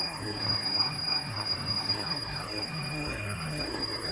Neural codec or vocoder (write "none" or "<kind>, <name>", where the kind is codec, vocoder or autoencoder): codec, SNAC